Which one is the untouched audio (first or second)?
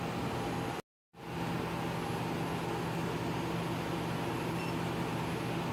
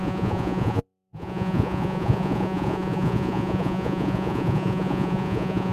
first